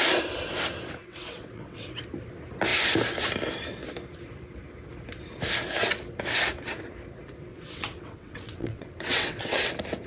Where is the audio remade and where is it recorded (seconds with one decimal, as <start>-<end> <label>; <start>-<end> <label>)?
0.0-1.0 recorded; 1.0-2.0 remade; 2.0-7.5 recorded; 7.5-9.7 remade; 9.7-10.1 recorded